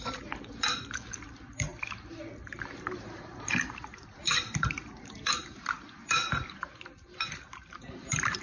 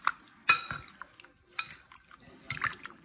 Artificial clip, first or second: first